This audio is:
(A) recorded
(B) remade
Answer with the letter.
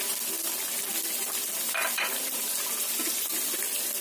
A